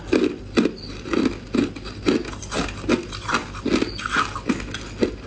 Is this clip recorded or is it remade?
recorded